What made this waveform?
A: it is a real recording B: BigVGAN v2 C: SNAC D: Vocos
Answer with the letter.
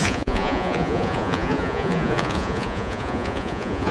D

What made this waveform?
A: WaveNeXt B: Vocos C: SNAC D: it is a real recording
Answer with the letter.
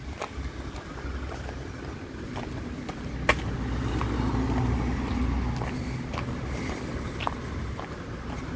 D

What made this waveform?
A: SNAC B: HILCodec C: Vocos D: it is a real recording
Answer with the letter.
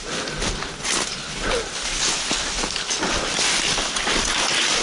D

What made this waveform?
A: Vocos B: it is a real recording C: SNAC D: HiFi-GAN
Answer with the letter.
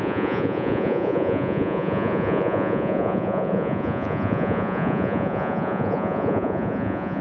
A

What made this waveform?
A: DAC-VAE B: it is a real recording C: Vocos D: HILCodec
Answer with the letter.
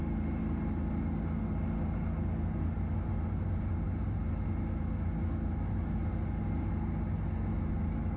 B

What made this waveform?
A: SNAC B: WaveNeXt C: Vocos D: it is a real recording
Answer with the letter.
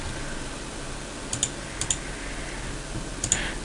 D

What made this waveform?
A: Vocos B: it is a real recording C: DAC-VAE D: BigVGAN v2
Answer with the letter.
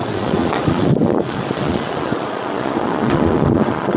A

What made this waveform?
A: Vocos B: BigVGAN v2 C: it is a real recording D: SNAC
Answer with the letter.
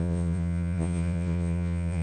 A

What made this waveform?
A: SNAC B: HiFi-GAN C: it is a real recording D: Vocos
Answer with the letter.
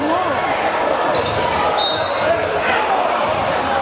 C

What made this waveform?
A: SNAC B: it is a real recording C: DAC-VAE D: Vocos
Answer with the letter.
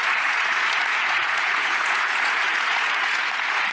D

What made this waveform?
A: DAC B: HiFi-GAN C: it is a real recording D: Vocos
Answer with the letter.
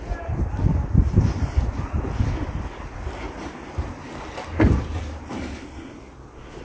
C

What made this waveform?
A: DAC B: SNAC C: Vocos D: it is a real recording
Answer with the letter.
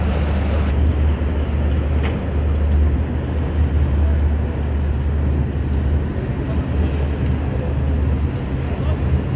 D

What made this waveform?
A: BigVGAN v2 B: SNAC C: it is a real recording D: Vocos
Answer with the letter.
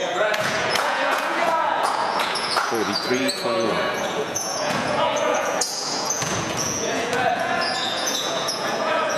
D